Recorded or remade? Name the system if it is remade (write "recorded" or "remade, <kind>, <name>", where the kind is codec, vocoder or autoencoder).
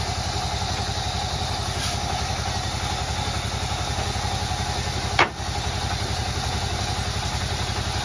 recorded